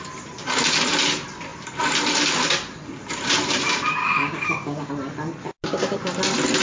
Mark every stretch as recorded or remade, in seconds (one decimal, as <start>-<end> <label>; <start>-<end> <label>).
0.0-4.0 recorded; 4.0-4.9 remade; 4.9-6.6 recorded

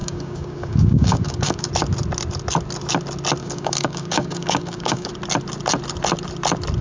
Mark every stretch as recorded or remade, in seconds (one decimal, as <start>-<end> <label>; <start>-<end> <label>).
0.0-1.7 remade; 1.7-3.4 recorded; 3.4-5.1 remade; 5.1-6.8 recorded